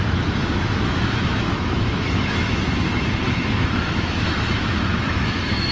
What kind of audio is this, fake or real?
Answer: fake